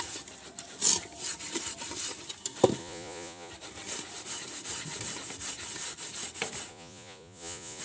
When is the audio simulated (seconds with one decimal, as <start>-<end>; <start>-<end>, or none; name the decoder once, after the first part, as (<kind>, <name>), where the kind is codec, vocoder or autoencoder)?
2.8-3.5 (vocoder, Vocos); 6.7-7.8